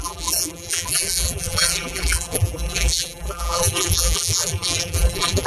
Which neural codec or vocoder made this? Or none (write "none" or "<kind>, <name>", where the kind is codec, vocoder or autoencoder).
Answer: vocoder, BigVGAN v2